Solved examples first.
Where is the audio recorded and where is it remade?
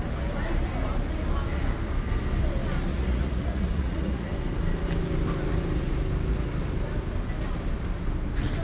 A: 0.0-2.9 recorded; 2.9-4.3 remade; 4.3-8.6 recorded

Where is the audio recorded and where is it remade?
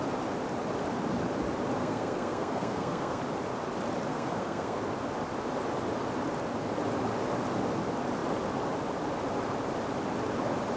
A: 0.0-1.8 recorded; 1.8-3.2 remade; 3.2-4.1 recorded; 4.1-4.8 remade; 4.8-10.8 recorded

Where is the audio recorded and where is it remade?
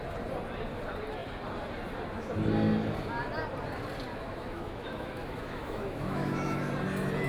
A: 0.0-4.1 recorded; 4.1-6.7 remade; 6.7-7.3 recorded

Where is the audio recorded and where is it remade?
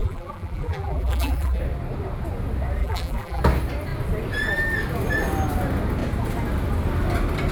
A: 0.0-1.6 remade; 1.6-2.8 recorded; 2.8-3.4 remade; 3.4-7.5 recorded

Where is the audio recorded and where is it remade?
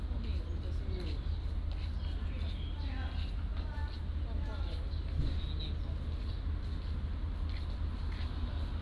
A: 0.0-8.8 recorded